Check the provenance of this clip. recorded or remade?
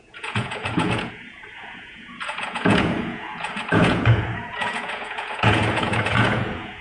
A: remade